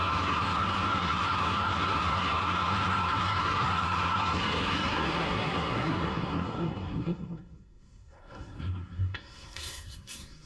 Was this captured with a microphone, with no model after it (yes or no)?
no